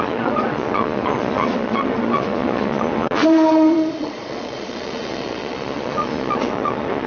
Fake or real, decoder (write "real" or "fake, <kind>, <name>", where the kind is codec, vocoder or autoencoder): fake, vocoder, Vocos